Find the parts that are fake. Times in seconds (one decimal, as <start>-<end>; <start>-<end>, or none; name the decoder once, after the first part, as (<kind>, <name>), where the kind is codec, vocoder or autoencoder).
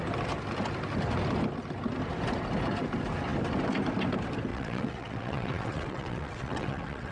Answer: 4.5-7.1 (vocoder, WaveNeXt)